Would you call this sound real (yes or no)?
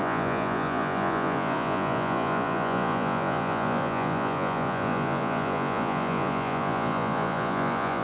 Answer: no